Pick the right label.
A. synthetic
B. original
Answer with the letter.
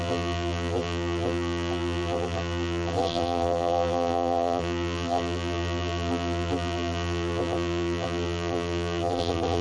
A